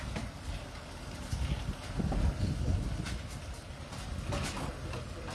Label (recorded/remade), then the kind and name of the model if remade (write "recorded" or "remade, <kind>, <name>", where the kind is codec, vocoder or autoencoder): recorded